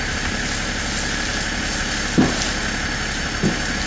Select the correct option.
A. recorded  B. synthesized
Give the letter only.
A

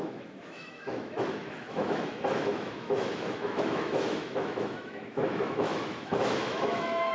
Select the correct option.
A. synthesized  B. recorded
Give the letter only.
A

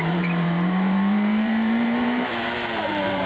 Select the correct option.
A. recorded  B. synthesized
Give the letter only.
B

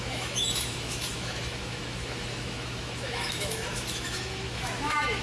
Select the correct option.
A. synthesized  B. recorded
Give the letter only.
A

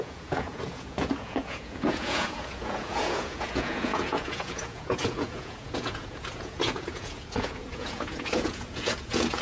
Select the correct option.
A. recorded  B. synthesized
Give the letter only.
B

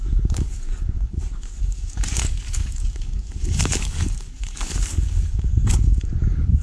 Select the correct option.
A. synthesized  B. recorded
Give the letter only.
A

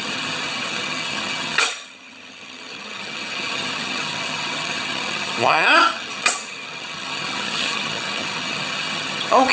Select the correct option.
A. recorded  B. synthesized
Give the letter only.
B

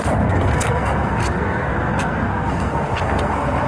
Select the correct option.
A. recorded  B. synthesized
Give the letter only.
B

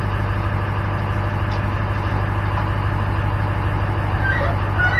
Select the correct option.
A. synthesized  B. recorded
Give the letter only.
B